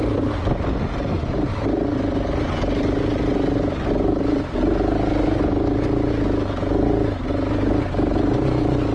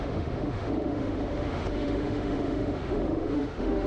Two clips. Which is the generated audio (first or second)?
second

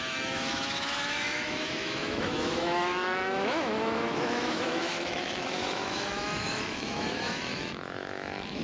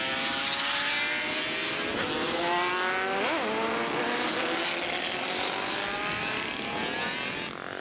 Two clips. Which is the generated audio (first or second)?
first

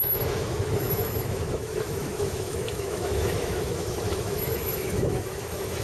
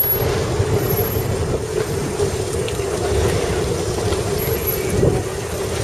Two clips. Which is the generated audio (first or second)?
first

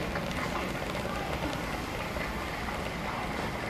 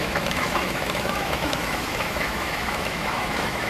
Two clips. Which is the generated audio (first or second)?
second